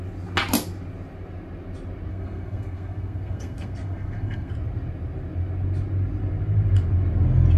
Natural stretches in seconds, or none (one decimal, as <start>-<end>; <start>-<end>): 0.0-2.1; 4.5-7.6